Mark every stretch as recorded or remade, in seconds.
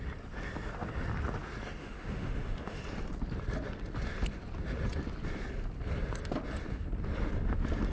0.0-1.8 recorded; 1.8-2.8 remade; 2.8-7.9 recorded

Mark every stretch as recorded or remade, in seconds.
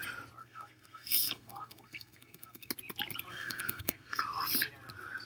0.0-0.4 recorded; 0.4-2.7 remade; 2.7-3.3 recorded; 3.3-4.2 remade; 4.2-5.2 recorded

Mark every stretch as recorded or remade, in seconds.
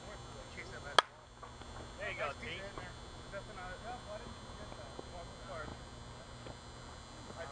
0.0-7.5 recorded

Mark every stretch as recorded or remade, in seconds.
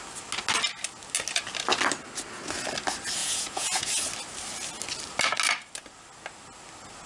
0.0-3.2 recorded; 3.2-3.9 remade; 3.9-7.1 recorded